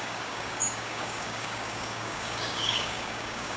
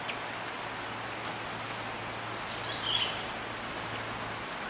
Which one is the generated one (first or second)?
first